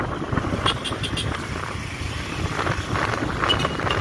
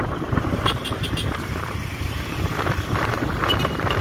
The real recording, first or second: first